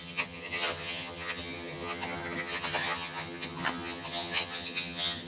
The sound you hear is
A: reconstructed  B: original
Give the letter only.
A